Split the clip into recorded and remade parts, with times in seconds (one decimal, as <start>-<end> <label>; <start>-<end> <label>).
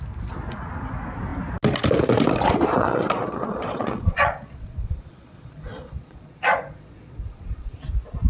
0.0-2.8 recorded; 2.8-7.8 remade; 7.8-8.3 recorded